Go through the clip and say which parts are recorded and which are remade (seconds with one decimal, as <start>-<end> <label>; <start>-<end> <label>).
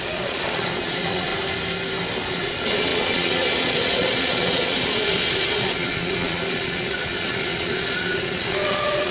0.0-1.3 remade; 1.3-2.3 recorded; 2.3-9.1 remade